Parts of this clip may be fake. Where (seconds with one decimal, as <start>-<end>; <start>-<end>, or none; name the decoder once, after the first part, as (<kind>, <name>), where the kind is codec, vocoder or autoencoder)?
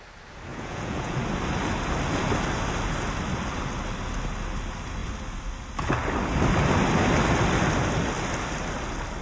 0.5-1.2 (vocoder, Vocos)